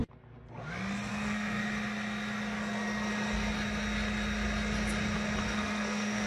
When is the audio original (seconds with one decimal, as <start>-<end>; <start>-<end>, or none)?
0.0-1.1; 1.6-5.4